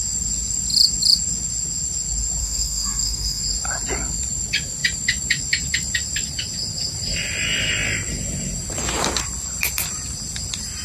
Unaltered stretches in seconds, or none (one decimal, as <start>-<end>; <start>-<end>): 0.0-2.4; 3.4-10.8